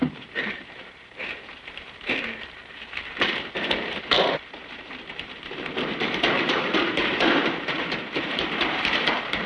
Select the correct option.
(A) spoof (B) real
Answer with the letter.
A